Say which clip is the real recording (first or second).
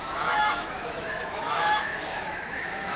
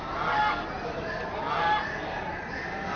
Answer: second